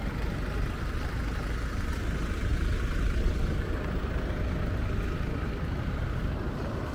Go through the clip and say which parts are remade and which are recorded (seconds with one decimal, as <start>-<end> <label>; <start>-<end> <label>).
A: 0.0-6.9 recorded

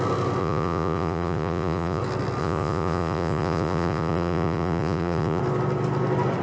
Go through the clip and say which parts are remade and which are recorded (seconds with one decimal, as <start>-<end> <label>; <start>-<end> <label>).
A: 0.0-0.4 recorded; 0.4-2.0 remade; 2.0-2.4 recorded; 2.4-5.4 remade; 5.4-6.4 recorded